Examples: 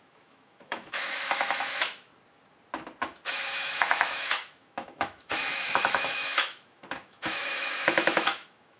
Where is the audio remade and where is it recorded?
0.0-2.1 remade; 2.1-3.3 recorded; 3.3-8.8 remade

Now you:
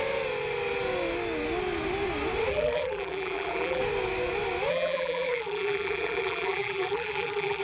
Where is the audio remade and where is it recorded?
0.0-2.5 recorded; 2.5-3.8 remade; 3.8-4.7 recorded; 4.7-7.6 remade

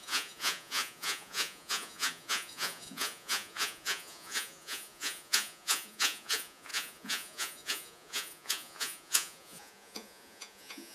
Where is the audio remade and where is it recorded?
0.0-10.9 remade

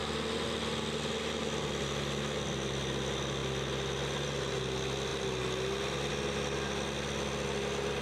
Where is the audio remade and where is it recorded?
0.0-8.0 recorded

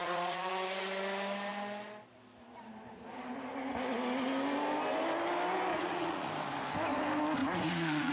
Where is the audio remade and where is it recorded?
0.0-0.5 remade; 0.5-5.7 recorded; 5.7-6.3 remade; 6.3-7.4 recorded; 7.4-8.1 remade

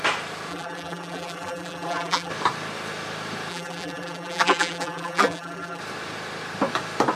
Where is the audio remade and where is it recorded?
0.0-0.5 recorded; 0.5-2.3 remade; 2.3-3.5 recorded; 3.5-5.8 remade; 5.8-7.2 recorded

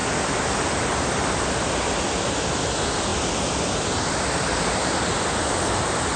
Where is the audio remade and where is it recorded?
0.0-6.2 recorded

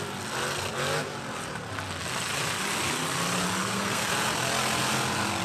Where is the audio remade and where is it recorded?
0.0-3.6 recorded; 3.6-4.1 remade; 4.1-5.4 recorded